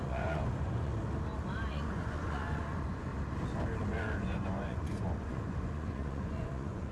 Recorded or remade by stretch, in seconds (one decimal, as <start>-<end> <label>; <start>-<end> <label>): 0.0-0.9 remade; 0.9-1.7 recorded; 1.7-3.1 remade; 3.1-3.9 recorded; 3.9-6.9 remade